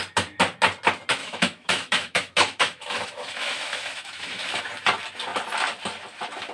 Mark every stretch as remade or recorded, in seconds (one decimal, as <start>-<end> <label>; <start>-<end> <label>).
0.0-1.2 recorded; 1.2-4.6 remade; 4.6-6.5 recorded